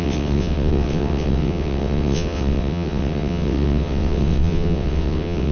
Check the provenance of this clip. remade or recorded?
remade